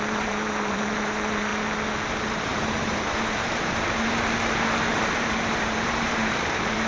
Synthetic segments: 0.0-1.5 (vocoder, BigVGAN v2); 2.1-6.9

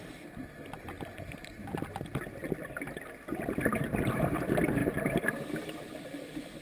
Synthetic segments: 4.8-6.6 (vocoder, BigVGAN v2)

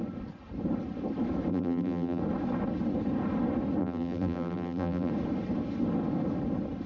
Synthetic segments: 1.5-2.2 (vocoder, BigVGAN v2); 3.8-5.1

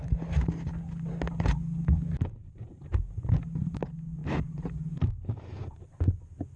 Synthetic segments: 2.4-3.1 (vocoder, BigVGAN v2); 4.2-5.9

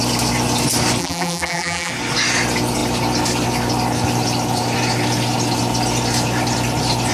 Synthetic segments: 1.0-1.9 (vocoder, BigVGAN v2)

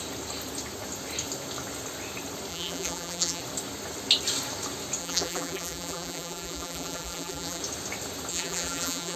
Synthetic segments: 2.5-3.4 (vocoder, BigVGAN v2); 5.0-7.6; 8.3-9.2